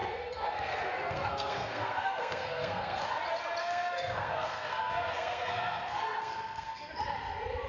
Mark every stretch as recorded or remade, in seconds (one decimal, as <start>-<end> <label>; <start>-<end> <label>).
0.0-3.0 remade; 3.0-3.6 recorded; 3.6-6.9 remade; 6.9-7.7 recorded